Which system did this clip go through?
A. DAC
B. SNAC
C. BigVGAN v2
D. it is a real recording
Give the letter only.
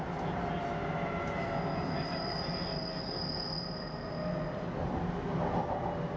D